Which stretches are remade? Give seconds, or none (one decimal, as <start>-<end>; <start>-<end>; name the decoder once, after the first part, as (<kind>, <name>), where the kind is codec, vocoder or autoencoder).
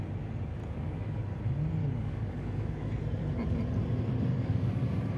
0.6-1.2 (codec, DAC); 1.8-3.0; 4.3-5.2